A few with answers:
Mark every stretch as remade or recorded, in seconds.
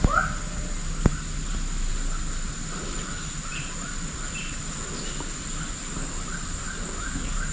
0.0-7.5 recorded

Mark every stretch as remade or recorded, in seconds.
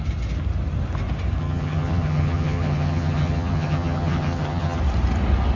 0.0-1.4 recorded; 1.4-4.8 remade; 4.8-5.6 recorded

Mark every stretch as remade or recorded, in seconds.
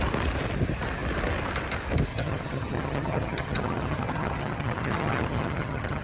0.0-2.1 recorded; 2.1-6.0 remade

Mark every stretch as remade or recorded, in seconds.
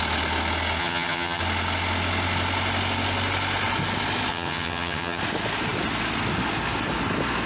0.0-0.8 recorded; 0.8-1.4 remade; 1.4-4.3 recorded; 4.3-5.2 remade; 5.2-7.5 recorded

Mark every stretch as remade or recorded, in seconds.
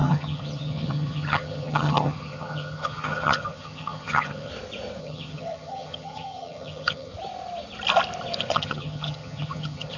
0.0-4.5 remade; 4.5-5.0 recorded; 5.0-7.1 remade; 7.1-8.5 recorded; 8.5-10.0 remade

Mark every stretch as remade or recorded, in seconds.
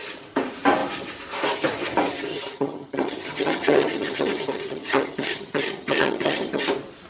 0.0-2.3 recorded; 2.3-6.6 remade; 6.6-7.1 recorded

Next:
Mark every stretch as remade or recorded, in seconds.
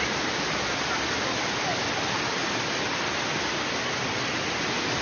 0.0-5.0 recorded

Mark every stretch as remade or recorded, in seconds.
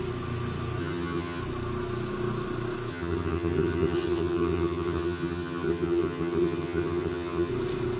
0.0-0.8 recorded; 0.8-1.4 remade; 1.4-2.9 recorded; 2.9-7.5 remade; 7.5-8.0 recorded